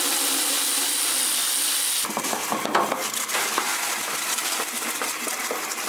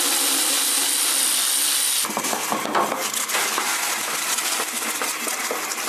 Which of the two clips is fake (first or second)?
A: first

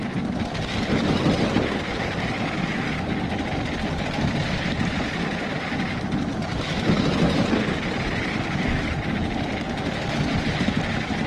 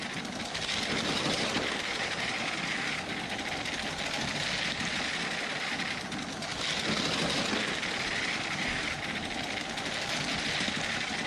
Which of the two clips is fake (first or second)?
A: first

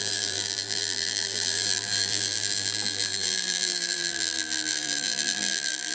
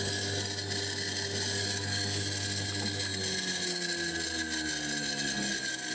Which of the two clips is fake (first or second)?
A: first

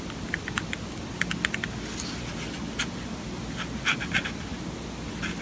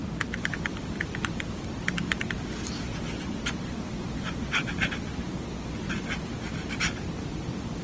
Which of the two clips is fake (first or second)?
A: second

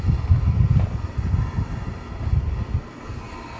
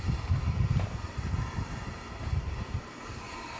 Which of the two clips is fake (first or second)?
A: second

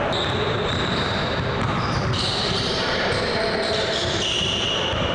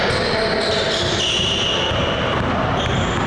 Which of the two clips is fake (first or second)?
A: first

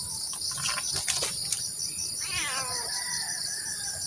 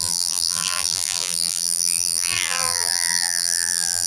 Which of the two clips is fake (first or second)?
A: second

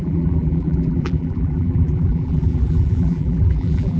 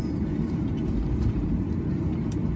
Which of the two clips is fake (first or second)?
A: first